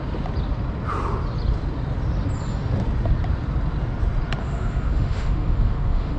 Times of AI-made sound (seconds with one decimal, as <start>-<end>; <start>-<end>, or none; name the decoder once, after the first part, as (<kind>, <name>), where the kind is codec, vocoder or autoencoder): 4.4-6.2 (autoencoder, DAC-VAE)